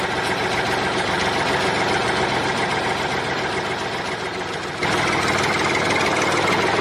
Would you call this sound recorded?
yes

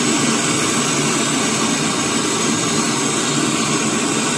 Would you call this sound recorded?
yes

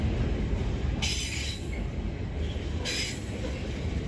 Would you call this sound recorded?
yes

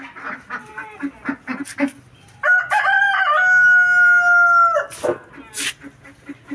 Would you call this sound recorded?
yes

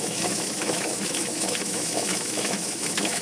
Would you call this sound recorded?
no